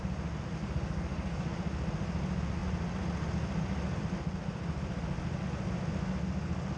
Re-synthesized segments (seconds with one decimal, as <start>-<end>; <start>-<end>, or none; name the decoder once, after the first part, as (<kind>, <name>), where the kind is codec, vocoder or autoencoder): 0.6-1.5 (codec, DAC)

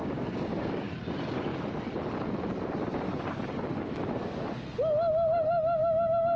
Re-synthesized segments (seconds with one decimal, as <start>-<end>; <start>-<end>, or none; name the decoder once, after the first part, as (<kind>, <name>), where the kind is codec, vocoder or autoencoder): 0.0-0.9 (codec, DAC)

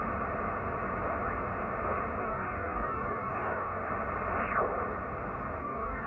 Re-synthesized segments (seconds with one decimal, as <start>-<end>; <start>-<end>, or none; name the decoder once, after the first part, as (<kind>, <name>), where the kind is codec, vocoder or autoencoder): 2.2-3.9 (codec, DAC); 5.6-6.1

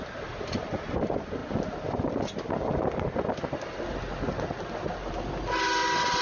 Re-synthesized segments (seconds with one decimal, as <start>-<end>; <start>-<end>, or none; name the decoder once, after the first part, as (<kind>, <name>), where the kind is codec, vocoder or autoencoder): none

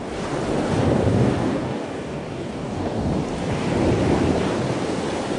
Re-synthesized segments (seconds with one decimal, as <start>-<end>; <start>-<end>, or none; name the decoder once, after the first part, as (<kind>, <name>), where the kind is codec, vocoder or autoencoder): 1.1-3.1 (codec, DAC)

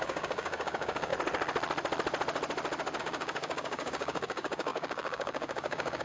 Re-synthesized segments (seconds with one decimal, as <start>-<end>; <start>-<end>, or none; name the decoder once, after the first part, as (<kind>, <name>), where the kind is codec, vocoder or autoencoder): 0.0-1.1 (codec, DAC); 3.0-6.0

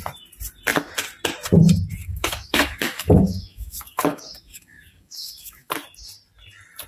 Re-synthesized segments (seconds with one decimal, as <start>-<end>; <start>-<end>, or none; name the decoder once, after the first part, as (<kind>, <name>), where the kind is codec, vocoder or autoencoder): 2.0-5.7 (codec, DAC)

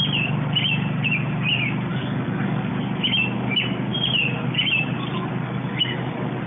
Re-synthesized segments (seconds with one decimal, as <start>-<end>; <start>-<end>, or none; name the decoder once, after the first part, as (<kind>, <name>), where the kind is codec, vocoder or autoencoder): 1.9-2.7 (codec, DAC)